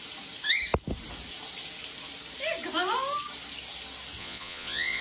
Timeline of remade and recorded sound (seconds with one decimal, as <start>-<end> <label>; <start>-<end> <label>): 0.0-4.2 recorded; 4.2-5.0 remade